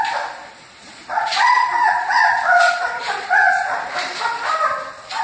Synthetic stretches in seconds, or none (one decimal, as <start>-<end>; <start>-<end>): 0.8-3.9